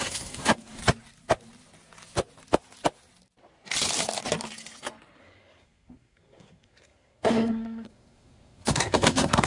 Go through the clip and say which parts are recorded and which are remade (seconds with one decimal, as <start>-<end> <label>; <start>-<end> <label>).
0.0-0.8 remade; 0.8-5.2 recorded; 5.2-9.5 remade